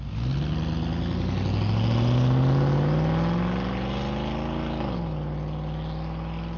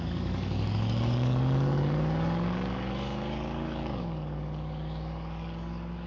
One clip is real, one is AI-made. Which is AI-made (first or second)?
second